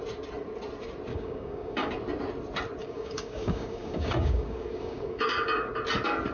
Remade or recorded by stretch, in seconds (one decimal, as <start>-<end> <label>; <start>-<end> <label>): 0.0-1.1 recorded; 1.1-1.9 remade; 1.9-2.8 recorded; 2.8-5.7 remade; 5.7-6.3 recorded